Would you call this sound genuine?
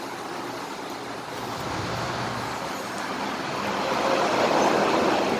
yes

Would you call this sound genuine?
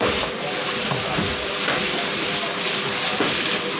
yes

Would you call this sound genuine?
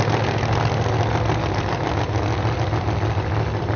yes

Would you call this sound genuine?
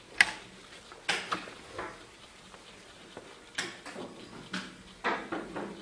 yes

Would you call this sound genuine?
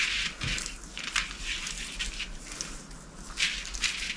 yes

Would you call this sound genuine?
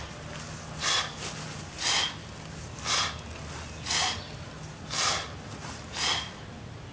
yes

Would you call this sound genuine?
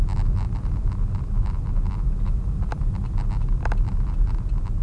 yes